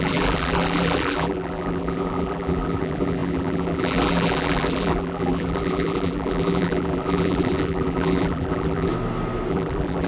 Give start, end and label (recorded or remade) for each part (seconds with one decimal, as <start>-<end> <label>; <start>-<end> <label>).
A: 0.0-8.9 remade; 8.9-9.5 recorded; 9.5-10.1 remade

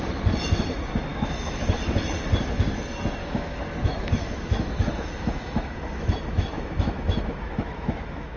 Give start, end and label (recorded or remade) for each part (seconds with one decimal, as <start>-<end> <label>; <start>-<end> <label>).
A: 0.0-1.1 recorded; 1.1-1.6 remade; 1.6-3.2 recorded; 3.2-8.4 remade